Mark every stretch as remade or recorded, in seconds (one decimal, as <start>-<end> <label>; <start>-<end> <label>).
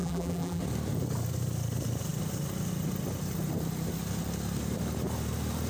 0.0-0.6 remade; 0.6-5.7 recorded